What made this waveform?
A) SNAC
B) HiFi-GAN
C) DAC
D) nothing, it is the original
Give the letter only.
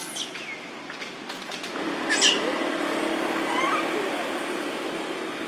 D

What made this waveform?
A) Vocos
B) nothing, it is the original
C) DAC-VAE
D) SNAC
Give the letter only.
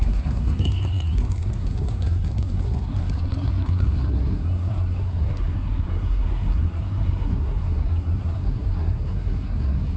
D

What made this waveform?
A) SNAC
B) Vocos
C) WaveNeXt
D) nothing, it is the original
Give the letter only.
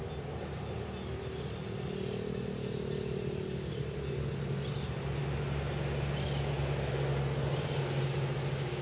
D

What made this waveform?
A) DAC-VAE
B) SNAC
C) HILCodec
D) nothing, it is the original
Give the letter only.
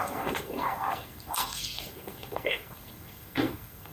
B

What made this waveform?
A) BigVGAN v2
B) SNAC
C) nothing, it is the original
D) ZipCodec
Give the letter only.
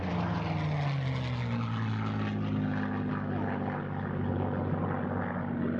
C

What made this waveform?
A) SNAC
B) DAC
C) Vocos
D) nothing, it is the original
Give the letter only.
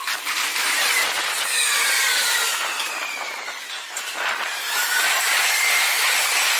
D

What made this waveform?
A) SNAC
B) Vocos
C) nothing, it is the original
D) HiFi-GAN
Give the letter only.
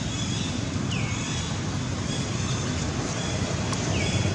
C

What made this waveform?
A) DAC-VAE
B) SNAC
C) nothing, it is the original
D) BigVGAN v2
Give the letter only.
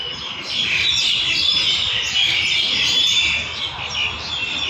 C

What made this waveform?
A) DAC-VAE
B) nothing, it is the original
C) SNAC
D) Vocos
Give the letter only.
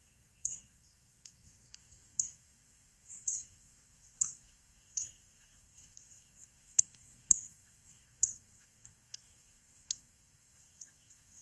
C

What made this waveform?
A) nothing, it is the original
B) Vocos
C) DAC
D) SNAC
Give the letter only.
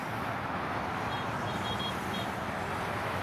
A